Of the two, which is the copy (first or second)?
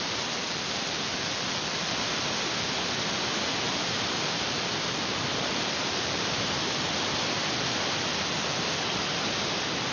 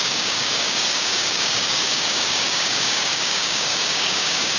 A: second